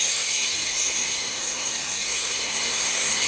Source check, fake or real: fake